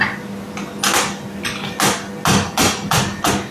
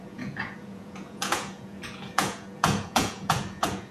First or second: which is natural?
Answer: first